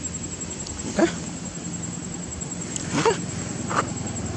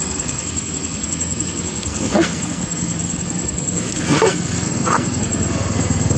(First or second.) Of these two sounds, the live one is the first